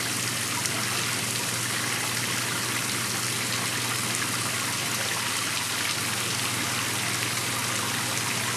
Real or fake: real